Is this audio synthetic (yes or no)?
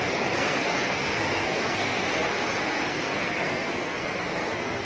yes